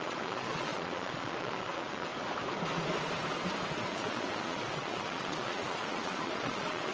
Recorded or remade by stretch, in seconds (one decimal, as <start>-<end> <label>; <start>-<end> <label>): 0.0-2.1 remade; 2.1-3.8 recorded; 3.8-6.9 remade